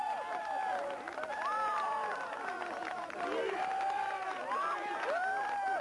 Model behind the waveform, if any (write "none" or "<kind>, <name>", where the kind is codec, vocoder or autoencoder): none